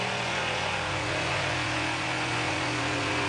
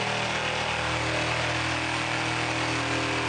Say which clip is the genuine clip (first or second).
second